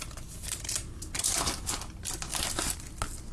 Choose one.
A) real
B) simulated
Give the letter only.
A